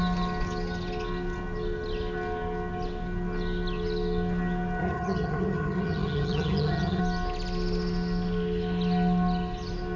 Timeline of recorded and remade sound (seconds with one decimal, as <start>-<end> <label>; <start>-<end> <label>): 0.0-4.8 recorded; 4.8-7.0 remade; 7.0-10.0 recorded